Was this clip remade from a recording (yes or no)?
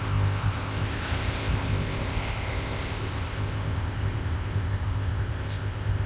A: yes